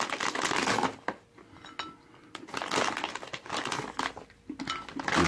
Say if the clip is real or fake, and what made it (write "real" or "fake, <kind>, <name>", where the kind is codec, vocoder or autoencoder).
real